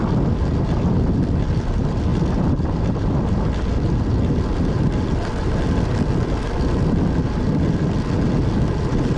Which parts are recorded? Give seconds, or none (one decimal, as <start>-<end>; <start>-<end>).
0.0-9.2